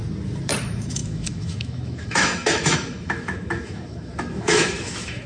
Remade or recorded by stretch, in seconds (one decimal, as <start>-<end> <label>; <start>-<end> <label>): 0.0-0.6 recorded; 0.6-5.3 remade